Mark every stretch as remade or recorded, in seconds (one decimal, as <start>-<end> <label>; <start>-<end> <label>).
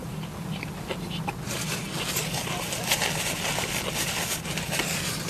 0.0-5.3 recorded